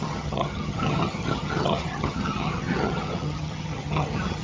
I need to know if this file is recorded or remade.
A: remade